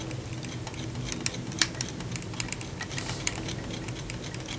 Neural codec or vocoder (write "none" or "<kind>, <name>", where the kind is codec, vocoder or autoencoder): none